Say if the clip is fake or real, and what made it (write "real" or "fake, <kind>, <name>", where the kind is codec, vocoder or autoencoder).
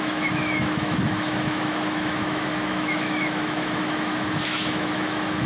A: fake, autoencoder, DAC-VAE